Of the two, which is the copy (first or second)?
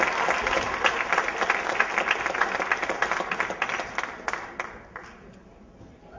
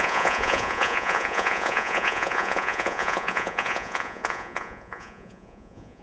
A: second